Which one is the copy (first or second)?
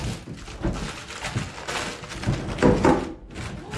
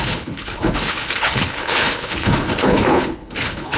second